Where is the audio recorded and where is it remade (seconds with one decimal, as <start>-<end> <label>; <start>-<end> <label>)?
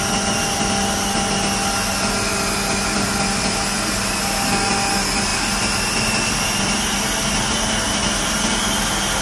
0.0-9.2 recorded